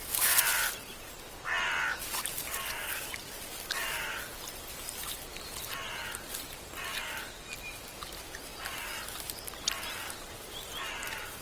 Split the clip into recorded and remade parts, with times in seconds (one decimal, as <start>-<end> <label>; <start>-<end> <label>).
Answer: 0.0-11.4 recorded